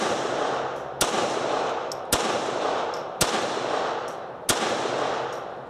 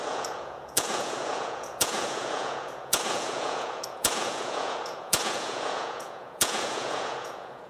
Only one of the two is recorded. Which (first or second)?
first